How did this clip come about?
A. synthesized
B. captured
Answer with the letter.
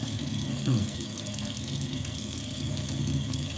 A